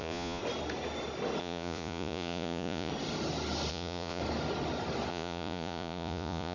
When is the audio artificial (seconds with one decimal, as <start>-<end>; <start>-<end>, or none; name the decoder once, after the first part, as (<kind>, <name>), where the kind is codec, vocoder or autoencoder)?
0.0-0.4 (vocoder, Vocos); 1.4-2.9; 3.7-4.2; 5.1-6.5